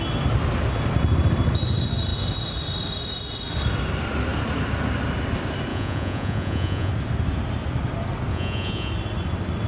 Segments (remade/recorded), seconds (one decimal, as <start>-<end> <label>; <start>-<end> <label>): 0.0-5.7 recorded; 5.7-6.9 remade; 6.9-8.3 recorded; 8.3-8.9 remade; 8.9-9.7 recorded